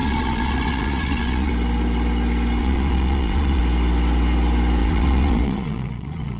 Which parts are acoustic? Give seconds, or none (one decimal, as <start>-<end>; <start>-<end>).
1.5-2.6; 3.6-4.8